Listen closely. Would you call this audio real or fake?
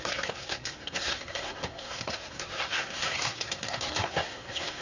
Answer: fake